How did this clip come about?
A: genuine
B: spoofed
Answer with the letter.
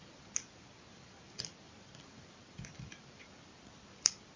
B